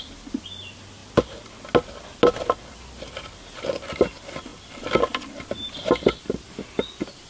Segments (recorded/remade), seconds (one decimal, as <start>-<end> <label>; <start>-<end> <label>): 0.0-7.3 recorded